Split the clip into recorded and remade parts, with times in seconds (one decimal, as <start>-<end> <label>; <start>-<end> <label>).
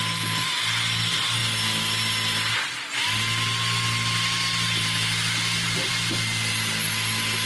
0.0-7.5 recorded